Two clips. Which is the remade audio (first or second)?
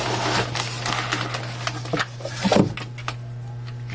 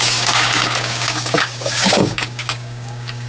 second